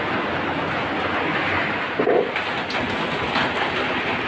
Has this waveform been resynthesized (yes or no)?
no